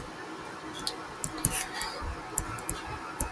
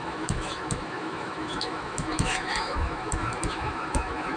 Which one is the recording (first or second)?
first